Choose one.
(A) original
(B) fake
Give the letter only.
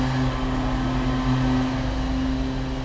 A